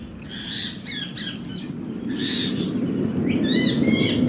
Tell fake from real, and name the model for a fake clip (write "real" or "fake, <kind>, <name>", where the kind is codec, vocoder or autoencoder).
real